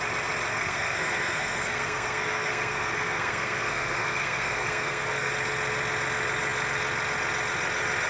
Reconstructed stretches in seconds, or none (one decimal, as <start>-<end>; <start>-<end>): 0.5-5.3